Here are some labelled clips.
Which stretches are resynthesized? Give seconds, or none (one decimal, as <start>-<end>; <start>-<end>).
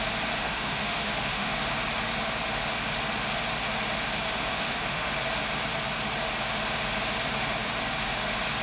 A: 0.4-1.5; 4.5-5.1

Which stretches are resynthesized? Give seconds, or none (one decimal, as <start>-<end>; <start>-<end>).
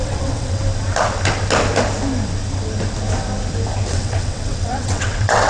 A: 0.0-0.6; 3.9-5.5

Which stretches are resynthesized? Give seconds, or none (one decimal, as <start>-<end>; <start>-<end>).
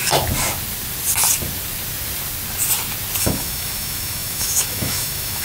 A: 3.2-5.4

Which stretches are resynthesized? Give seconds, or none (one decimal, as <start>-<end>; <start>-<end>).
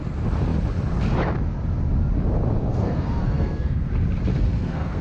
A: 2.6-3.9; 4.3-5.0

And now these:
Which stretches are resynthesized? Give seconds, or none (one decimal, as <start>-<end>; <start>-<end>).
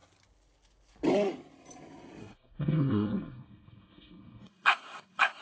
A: 2.2-5.4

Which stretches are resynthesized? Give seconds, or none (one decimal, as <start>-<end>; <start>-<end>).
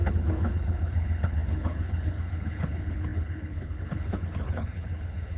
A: 0.0-5.4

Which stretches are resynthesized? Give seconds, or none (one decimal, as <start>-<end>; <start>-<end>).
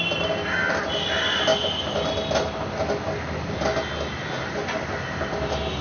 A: none